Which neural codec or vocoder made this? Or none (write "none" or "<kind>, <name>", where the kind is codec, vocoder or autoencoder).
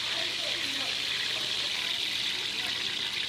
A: none